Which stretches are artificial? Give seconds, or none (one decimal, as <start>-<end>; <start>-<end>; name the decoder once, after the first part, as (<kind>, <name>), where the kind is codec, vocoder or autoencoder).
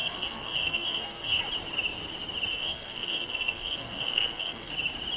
0.0-1.4 (codec, SNAC); 2.5-4.7